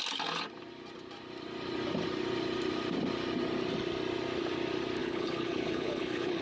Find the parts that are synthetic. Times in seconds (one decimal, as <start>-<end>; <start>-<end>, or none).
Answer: 5.0-6.4